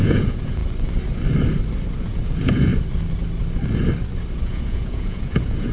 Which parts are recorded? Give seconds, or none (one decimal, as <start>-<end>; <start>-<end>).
0.6-2.0; 2.7-4.3